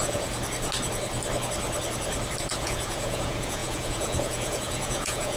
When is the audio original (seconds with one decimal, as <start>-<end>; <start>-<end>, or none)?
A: 0.4-2.5